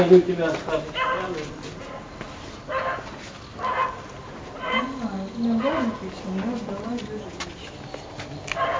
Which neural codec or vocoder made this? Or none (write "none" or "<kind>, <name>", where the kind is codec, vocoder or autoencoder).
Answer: none